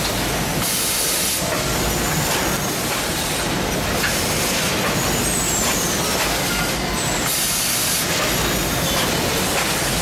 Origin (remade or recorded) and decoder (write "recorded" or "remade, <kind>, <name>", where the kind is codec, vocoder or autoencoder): recorded